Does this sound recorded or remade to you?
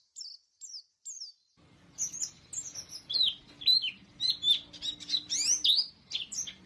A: recorded